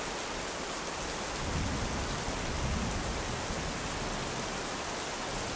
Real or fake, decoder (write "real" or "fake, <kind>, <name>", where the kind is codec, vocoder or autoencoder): real